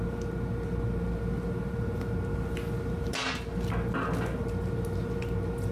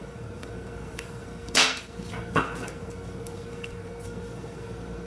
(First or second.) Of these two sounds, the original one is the first